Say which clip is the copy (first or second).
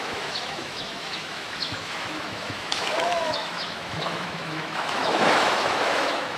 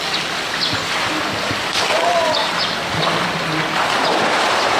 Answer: first